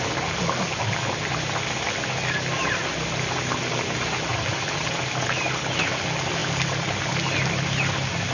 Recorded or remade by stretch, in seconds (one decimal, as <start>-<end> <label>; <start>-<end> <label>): 0.0-8.3 recorded